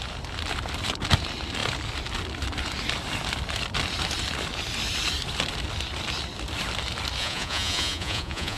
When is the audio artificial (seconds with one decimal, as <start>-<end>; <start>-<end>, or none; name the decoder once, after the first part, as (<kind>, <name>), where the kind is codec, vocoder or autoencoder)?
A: 7.2-8.6 (vocoder, Vocos)